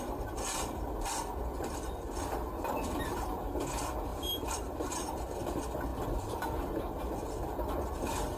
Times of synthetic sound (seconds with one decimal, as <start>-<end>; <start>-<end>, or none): 4.1-5.3